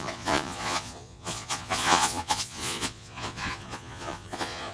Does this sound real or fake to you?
fake